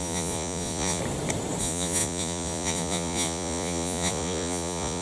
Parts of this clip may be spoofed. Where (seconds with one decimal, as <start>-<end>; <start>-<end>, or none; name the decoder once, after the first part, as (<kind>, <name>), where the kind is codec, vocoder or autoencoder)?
0.0-1.0 (vocoder, Vocos); 1.6-5.0